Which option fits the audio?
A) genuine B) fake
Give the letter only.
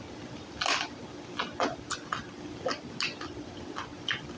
A